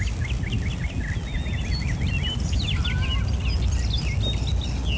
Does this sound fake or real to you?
real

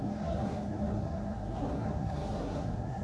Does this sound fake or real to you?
fake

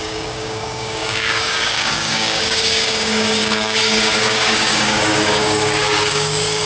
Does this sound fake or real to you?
fake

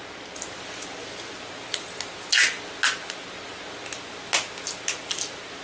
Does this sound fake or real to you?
real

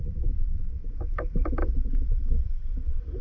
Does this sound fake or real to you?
fake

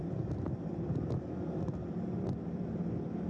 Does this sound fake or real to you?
real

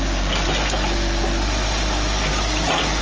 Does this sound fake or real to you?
real